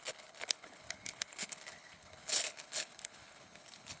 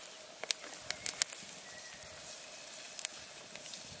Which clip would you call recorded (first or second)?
second